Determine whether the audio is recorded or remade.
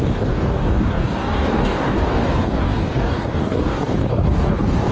remade